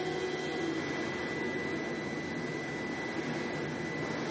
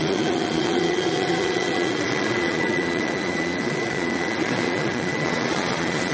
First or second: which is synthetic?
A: second